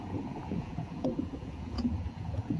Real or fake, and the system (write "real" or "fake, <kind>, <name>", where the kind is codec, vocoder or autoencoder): fake, vocoder, Vocos